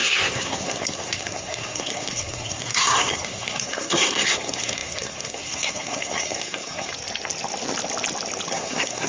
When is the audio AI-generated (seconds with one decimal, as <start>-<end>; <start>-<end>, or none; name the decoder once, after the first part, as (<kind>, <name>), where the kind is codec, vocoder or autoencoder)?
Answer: 0.0-6.9 (codec, SNAC); 8.5-9.1